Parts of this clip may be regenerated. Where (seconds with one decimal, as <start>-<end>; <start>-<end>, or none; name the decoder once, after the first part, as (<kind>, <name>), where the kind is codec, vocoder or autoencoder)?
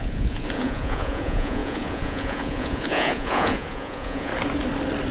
0.0-4.3 (vocoder, Vocos)